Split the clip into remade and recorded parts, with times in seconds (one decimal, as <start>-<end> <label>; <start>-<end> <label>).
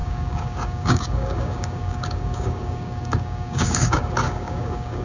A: 0.0-5.0 remade